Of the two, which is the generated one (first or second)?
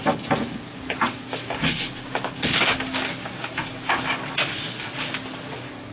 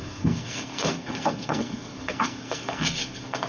second